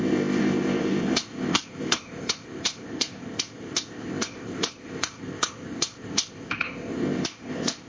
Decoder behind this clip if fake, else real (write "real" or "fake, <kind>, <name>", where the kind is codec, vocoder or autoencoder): fake, codec, ZipCodec